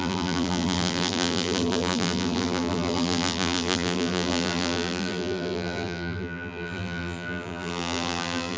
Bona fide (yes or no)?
no